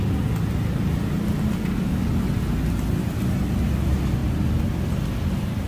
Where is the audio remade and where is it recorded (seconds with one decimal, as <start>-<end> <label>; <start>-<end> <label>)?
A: 0.0-5.7 recorded